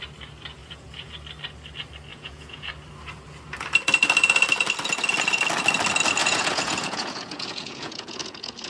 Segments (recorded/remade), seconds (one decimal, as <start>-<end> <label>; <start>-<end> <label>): 0.0-0.6 recorded; 0.6-1.1 remade; 1.1-2.1 recorded; 2.1-2.7 remade; 2.7-6.2 recorded; 6.2-8.7 remade